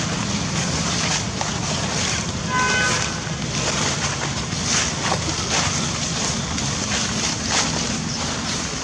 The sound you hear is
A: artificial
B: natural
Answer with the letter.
B